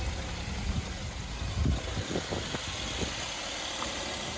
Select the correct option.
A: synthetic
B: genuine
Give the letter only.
B